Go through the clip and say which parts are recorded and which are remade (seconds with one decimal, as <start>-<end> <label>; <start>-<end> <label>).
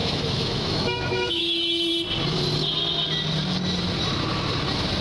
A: 0.0-1.4 remade; 1.4-5.0 recorded